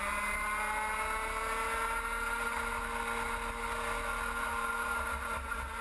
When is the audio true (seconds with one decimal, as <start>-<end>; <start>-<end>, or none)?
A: 0.0-4.5